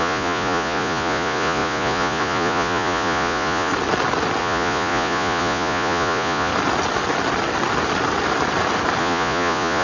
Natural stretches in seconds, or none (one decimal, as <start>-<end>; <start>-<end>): 3.7-4.4; 6.5-9.0